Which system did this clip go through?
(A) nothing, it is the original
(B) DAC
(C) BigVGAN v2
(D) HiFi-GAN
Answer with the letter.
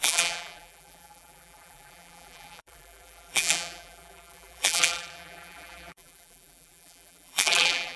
C